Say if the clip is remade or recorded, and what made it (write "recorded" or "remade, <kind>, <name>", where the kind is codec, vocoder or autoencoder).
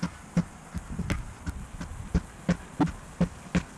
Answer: recorded